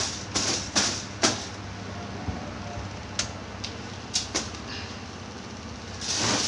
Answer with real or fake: real